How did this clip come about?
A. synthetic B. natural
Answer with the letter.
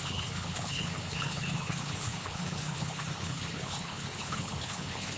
A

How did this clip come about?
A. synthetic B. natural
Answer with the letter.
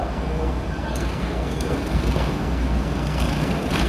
A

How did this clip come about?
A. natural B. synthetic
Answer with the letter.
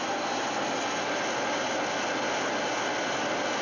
A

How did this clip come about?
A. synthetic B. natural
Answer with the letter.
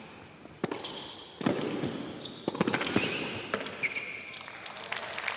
B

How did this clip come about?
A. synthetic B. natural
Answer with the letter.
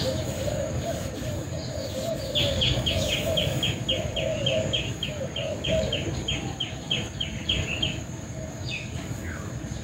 A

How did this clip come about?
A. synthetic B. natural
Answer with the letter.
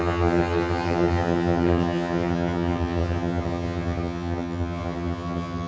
A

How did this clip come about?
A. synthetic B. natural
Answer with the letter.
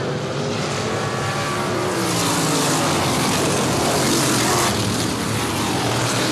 B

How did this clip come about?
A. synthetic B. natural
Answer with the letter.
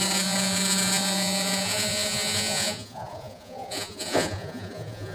A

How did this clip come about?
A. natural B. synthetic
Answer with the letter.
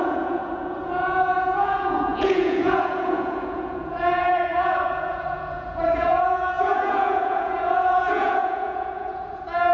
B